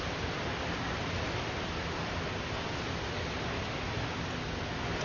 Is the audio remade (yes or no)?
no